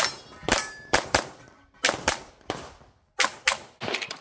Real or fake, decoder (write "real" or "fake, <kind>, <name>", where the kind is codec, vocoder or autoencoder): real